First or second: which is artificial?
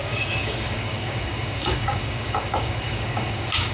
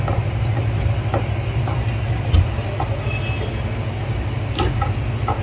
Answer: first